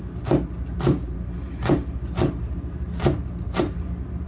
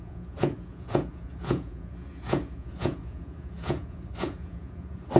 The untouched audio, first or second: first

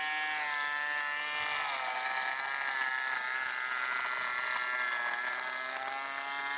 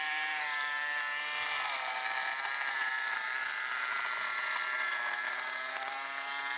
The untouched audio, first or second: first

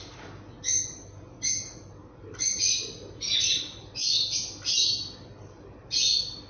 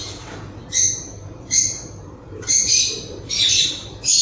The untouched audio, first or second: first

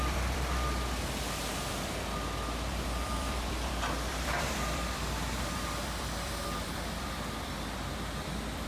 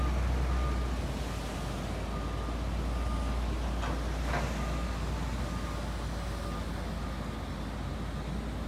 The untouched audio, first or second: second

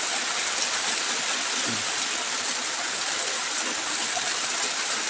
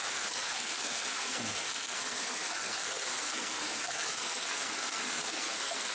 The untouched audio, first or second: first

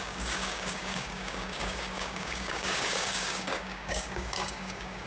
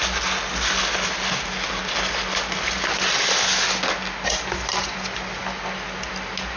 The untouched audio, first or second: second